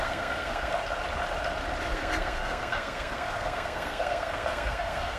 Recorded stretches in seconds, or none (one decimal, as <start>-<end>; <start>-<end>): 0.7-1.8